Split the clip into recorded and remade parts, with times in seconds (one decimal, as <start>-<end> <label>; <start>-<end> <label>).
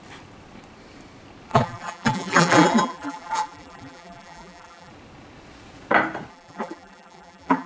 0.0-1.5 recorded; 1.5-4.9 remade; 4.9-6.3 recorded; 6.3-7.7 remade